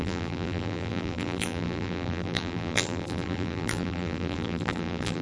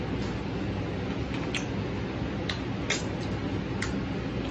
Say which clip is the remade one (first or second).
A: first